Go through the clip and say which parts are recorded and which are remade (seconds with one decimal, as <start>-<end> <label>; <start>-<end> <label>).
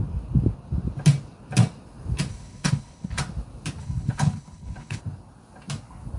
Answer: 0.0-2.3 recorded; 2.3-3.2 remade; 3.2-3.8 recorded; 3.8-5.0 remade; 5.0-6.2 recorded